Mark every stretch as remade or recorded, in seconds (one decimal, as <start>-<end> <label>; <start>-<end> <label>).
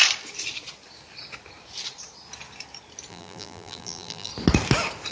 0.0-3.1 recorded; 3.1-4.3 remade; 4.3-5.1 recorded